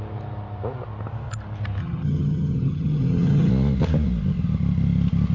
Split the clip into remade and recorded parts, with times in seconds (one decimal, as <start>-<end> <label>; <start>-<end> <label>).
0.0-1.8 recorded; 1.8-3.5 remade; 3.5-5.3 recorded